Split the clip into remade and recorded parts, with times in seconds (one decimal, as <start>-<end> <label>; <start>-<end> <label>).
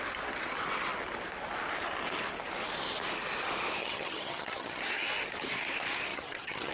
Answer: 0.0-3.8 recorded; 3.8-4.8 remade; 4.8-6.1 recorded; 6.1-6.7 remade